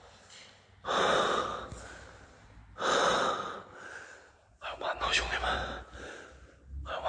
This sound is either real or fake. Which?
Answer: real